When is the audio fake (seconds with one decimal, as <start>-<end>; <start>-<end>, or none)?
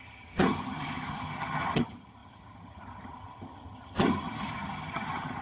0.0-5.4